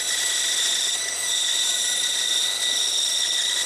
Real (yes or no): yes